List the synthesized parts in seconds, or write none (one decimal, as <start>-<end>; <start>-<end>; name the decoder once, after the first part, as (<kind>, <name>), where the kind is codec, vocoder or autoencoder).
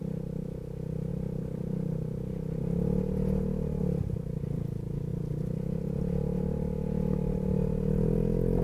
none